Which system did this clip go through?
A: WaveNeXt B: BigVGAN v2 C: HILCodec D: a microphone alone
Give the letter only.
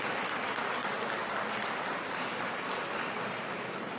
D